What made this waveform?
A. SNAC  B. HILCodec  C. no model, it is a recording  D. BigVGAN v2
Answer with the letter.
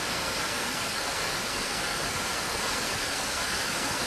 A